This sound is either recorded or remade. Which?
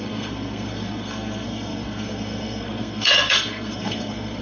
remade